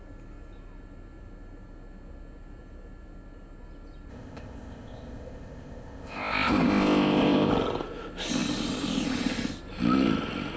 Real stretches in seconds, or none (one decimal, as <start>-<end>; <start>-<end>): 0.0-4.1; 7.5-10.6